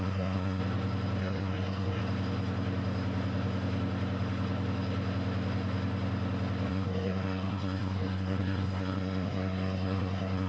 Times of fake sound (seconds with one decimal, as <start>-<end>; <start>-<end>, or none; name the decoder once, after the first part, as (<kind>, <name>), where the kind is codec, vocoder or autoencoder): 0.0-0.6 (codec, SNAC); 1.2-2.0; 6.7-10.5